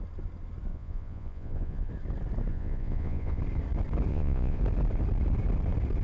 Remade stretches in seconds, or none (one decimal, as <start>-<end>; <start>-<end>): 0.7-1.9; 2.5-3.4; 4.1-4.6